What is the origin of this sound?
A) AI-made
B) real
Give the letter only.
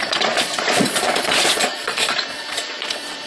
A